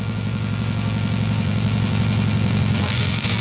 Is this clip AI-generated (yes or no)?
yes